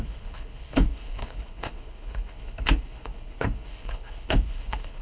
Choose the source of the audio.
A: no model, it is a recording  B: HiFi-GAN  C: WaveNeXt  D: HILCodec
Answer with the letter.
D